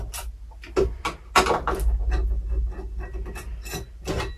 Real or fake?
real